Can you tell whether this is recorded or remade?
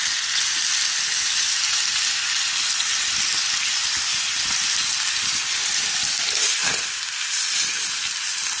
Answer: recorded